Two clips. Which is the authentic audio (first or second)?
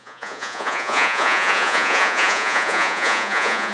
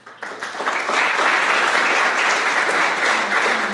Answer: second